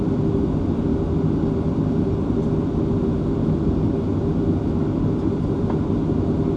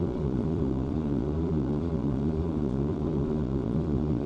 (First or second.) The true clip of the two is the first